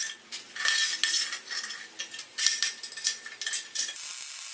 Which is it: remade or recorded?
recorded